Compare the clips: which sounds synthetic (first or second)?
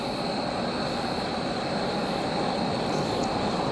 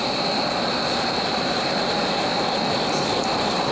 second